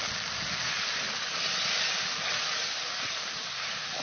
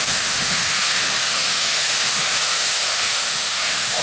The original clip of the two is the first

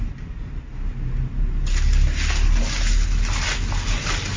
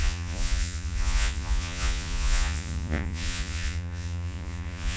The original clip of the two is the first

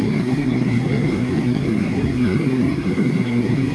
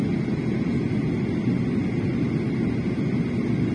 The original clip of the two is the second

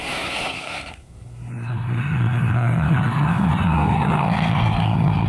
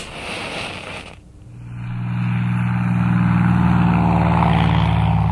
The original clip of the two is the second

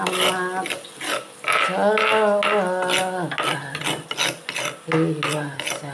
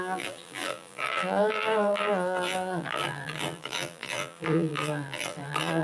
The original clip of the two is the first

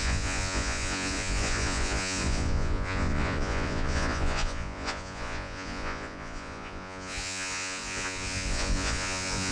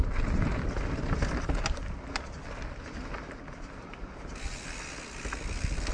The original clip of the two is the second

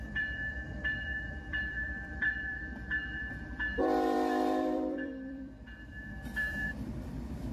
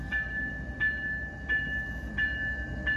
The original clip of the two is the second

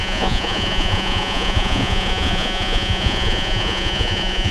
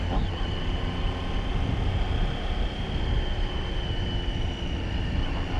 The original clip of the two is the second